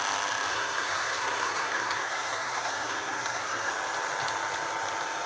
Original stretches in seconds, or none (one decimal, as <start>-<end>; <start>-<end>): 0.0-0.5; 3.7-5.3